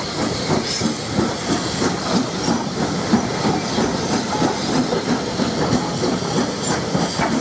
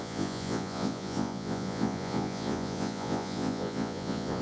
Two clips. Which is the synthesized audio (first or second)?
second